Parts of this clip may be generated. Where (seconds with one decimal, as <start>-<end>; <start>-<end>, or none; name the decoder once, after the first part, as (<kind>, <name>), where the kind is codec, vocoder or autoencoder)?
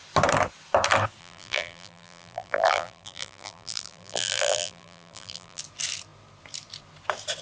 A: 1.2-5.6 (vocoder, BigVGAN v2)